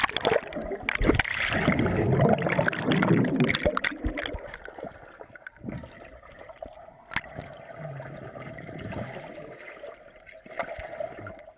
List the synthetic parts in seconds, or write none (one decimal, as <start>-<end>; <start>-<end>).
none